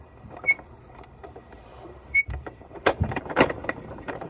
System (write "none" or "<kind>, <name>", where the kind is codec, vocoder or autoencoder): vocoder, BigVGAN v2